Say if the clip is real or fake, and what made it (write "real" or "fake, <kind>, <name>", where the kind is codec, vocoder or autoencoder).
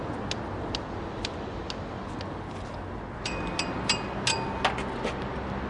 real